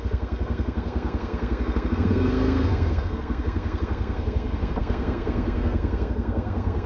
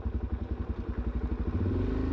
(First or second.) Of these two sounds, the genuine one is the second